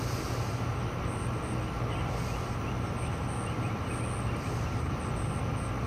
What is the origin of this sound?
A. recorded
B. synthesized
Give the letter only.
A